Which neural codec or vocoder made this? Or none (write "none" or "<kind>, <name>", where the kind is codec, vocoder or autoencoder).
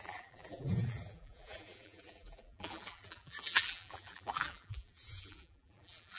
vocoder, BigVGAN v2